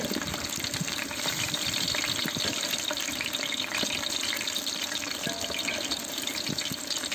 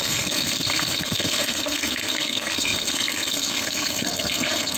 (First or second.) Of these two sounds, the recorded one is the first